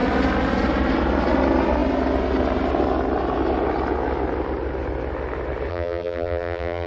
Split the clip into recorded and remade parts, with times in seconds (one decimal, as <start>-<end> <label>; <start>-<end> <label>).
0.0-5.7 recorded; 5.7-6.9 remade